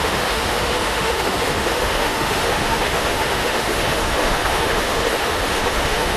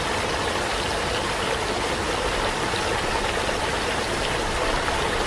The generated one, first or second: first